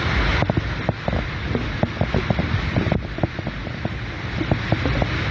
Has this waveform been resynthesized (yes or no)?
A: no